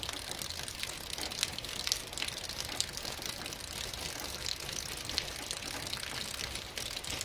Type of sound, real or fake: real